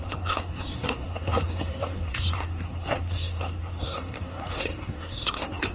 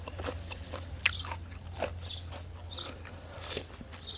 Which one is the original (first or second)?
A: second